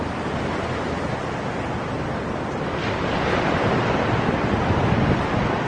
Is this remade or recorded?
recorded